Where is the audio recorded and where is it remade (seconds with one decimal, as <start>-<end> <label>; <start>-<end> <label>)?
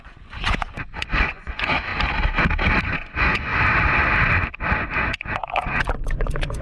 0.0-1.9 remade; 1.9-2.8 recorded; 2.8-3.5 remade; 3.5-4.9 recorded; 4.9-6.6 remade